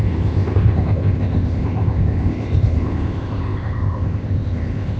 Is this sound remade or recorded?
remade